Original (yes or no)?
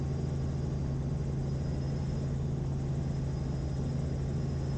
yes